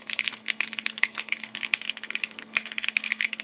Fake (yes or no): yes